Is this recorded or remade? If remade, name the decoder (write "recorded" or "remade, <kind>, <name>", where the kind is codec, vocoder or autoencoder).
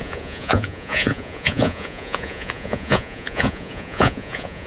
remade, vocoder, Vocos